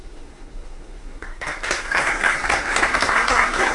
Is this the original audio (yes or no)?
no